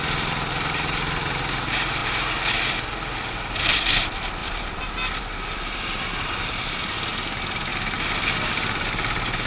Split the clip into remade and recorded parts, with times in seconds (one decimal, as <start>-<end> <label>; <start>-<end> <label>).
0.0-2.0 remade; 2.0-3.6 recorded; 3.6-7.7 remade; 7.7-8.5 recorded; 8.5-9.5 remade